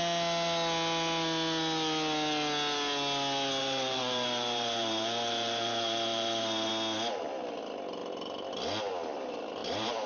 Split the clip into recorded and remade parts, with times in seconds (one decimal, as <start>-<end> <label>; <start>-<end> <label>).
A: 0.0-3.6 recorded; 3.6-6.7 remade; 6.7-9.6 recorded; 9.6-10.1 remade